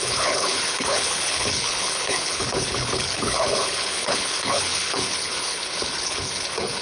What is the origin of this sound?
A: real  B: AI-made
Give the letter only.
B